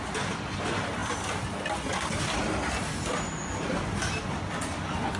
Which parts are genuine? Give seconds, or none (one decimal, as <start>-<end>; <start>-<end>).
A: 0.0-5.2